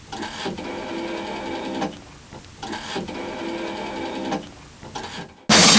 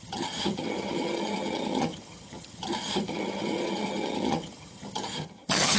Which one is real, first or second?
first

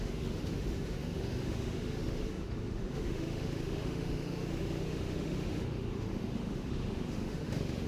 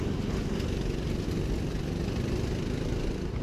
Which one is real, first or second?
second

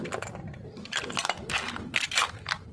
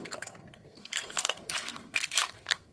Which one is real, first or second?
first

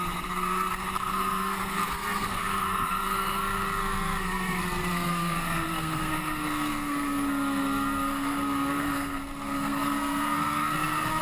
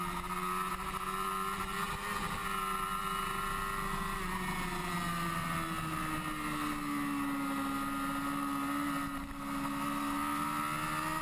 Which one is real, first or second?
second